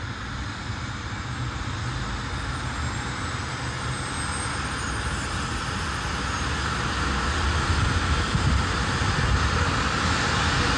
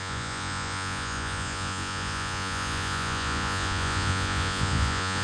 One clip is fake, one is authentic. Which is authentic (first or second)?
first